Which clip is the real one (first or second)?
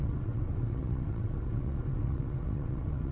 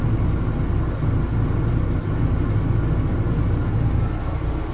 second